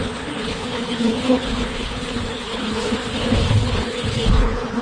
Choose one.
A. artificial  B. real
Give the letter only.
A